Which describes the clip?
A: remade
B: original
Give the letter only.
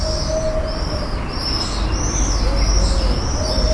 B